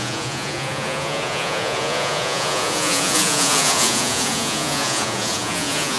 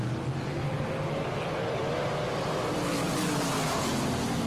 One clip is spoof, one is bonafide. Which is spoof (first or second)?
first